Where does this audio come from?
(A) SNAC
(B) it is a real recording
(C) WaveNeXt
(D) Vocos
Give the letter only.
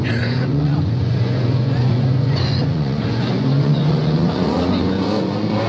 D